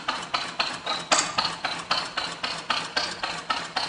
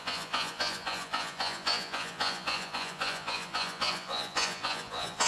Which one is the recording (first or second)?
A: first